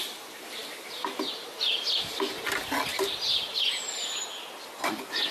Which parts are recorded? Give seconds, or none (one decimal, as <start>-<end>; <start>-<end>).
0.0-2.9; 3.6-5.3